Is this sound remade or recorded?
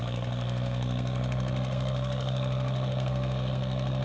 remade